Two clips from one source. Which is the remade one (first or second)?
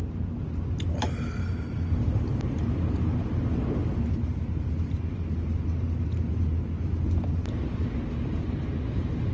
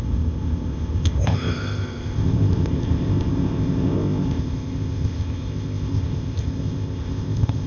second